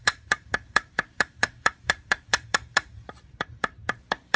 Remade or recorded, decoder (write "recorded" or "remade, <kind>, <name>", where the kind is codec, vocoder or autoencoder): remade, vocoder, BigVGAN v2